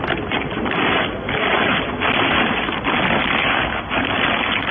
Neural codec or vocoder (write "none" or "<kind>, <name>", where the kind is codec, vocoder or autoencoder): none